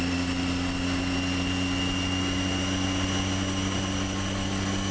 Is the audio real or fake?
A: real